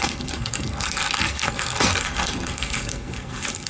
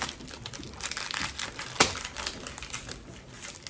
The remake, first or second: first